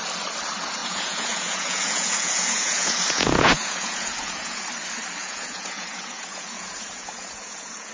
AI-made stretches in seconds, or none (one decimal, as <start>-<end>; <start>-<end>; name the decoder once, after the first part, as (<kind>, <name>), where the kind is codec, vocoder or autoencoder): 0.8-4.6 (vocoder, Vocos); 5.2-7.9